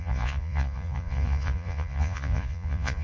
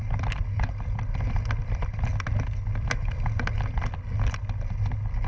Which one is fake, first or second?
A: first